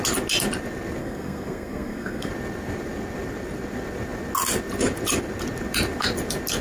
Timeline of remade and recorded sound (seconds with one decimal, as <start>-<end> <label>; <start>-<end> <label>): 0.0-1.0 recorded; 1.0-2.3 remade; 2.3-6.6 recorded